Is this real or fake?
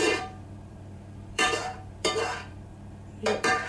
fake